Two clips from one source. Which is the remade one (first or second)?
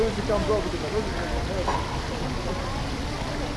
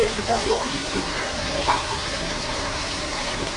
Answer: second